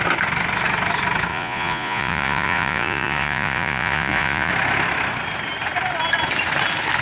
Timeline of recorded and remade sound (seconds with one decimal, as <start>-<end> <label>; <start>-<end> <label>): 0.0-1.3 recorded; 1.3-4.5 remade; 4.5-7.0 recorded